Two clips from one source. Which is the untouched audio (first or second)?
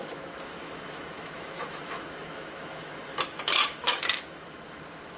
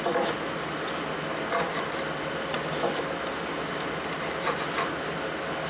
second